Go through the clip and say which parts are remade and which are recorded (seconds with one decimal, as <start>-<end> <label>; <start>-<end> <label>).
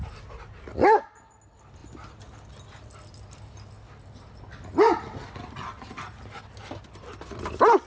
0.0-7.9 recorded